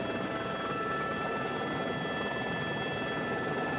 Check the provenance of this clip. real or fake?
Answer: real